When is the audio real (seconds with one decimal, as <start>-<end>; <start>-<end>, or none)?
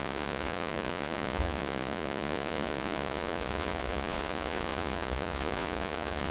none